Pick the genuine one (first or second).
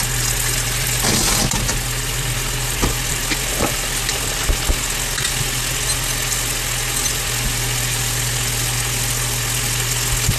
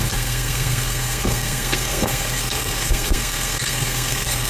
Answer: first